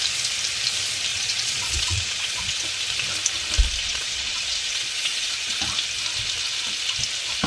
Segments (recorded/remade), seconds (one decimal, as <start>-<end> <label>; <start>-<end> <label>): 0.0-1.1 recorded; 1.1-2.7 remade; 2.7-3.8 recorded; 3.8-5.6 remade; 5.6-7.5 recorded